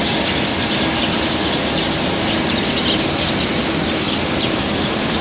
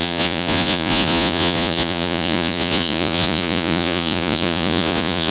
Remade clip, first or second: second